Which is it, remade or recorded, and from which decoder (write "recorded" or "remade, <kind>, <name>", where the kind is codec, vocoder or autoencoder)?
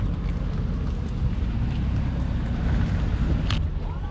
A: recorded